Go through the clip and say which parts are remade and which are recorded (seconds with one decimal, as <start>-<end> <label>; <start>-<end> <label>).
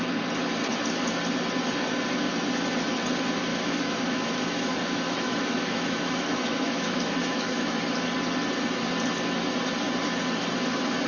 0.0-3.5 recorded; 3.5-7.7 remade; 7.7-11.1 recorded